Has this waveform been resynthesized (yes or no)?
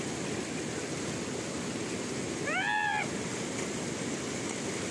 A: no